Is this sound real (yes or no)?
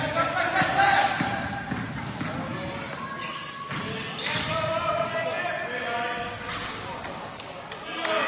yes